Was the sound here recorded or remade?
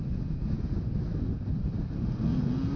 recorded